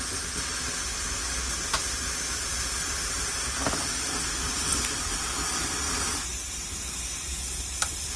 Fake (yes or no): no